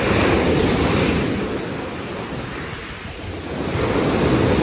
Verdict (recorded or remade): recorded